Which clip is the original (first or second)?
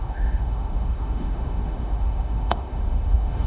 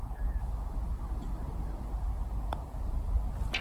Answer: second